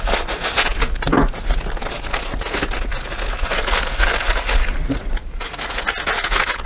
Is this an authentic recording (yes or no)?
yes